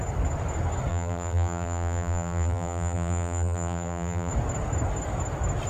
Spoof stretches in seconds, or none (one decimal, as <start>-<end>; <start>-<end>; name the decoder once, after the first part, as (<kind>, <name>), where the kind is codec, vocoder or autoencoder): 0.9-4.3 (vocoder, BigVGAN v2)